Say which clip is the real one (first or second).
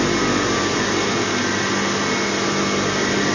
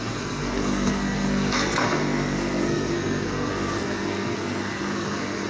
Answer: first